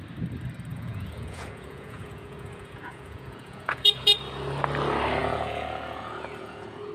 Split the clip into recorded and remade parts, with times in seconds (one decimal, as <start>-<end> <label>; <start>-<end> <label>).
0.0-0.7 recorded; 0.7-4.1 remade; 4.1-5.2 recorded; 5.2-6.9 remade